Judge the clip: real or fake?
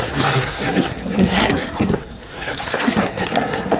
fake